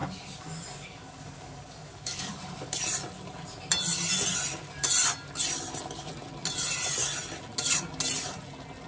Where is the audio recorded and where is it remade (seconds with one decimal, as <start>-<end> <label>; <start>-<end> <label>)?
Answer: 0.0-2.3 remade; 2.3-8.9 recorded